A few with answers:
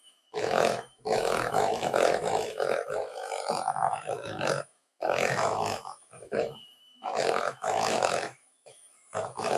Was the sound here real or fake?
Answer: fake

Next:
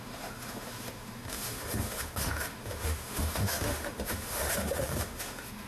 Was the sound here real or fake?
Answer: fake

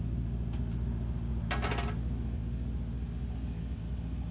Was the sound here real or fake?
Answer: real